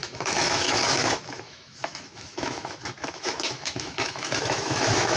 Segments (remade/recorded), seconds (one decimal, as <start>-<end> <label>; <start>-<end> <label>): 0.0-5.2 remade